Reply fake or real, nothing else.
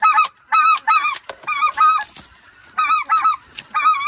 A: fake